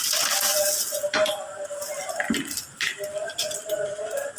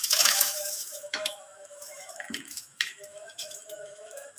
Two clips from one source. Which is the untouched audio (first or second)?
first